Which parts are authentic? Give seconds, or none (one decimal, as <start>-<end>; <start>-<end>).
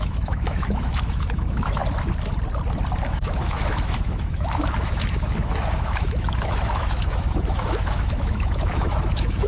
1.8-3.0